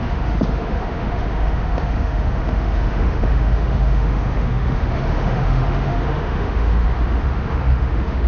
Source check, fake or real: fake